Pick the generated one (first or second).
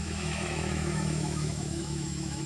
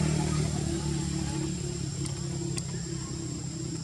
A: first